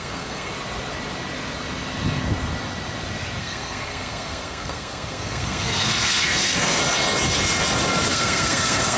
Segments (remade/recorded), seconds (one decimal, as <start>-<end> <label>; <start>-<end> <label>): 0.0-0.5 remade; 0.5-3.4 recorded; 3.4-6.8 remade; 6.8-8.1 recorded; 8.1-9.0 remade

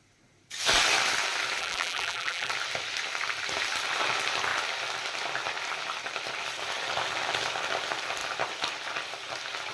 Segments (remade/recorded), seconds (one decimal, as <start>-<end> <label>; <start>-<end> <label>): 0.0-1.6 recorded; 1.6-2.5 remade; 2.5-9.7 recorded

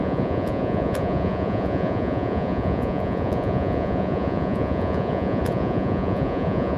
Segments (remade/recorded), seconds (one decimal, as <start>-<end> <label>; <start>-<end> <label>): 0.0-6.8 remade

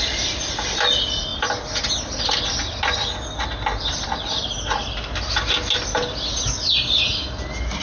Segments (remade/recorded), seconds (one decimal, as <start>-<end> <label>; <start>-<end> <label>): 0.0-3.5 recorded; 3.5-4.1 remade; 4.1-7.8 recorded

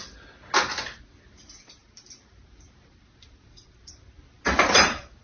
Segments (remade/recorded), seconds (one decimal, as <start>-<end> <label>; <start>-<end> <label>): 0.0-1.3 recorded; 1.3-5.2 remade

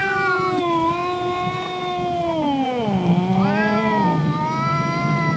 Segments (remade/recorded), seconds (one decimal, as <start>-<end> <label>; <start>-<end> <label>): 0.0-0.6 remade; 0.6-5.4 recorded